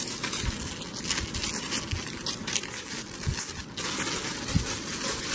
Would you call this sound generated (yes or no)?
no